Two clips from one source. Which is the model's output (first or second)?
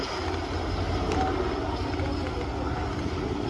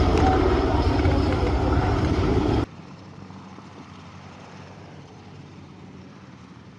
second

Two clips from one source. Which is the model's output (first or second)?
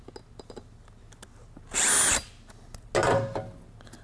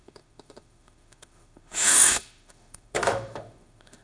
second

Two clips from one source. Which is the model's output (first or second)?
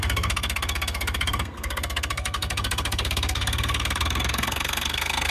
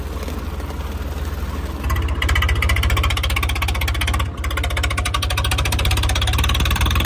first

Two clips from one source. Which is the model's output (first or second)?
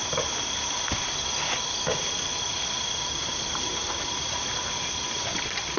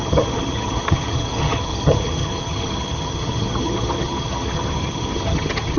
second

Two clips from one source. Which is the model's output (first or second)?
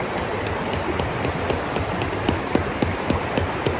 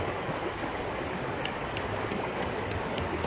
second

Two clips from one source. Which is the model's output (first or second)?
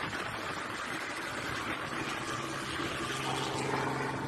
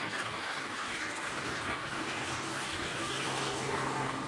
second